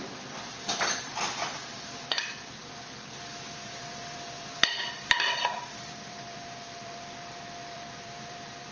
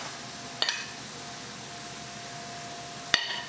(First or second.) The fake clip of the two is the first